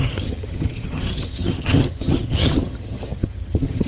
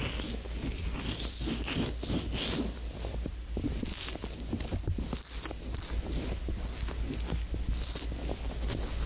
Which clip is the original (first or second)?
second